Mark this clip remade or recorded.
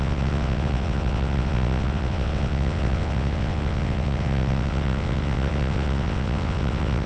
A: remade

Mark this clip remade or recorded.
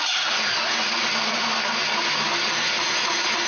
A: recorded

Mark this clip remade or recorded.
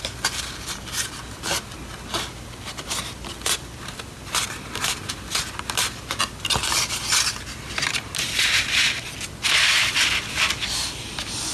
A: recorded